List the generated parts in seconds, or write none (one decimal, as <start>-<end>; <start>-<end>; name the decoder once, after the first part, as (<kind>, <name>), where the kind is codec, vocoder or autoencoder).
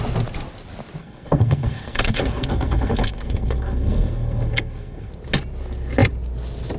1.0-5.1 (codec, SNAC)